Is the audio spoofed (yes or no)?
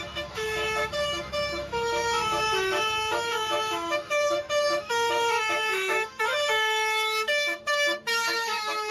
yes